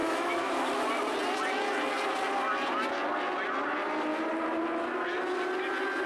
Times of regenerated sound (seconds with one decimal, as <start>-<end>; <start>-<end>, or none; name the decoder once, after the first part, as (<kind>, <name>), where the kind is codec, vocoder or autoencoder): 0.0-0.5 (autoencoder, DAC-VAE)